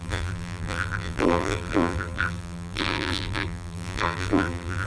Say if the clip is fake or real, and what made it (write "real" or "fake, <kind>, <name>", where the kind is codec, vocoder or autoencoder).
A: fake, vocoder, BigVGAN v2